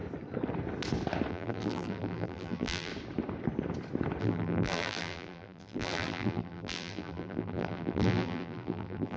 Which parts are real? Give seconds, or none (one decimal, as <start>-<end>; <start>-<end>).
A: 0.0-1.3; 2.9-4.2